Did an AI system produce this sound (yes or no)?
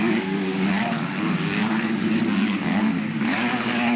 yes